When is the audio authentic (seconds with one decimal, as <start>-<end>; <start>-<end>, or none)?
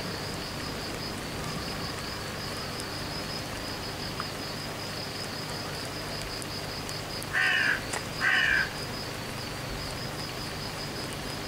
0.0-11.5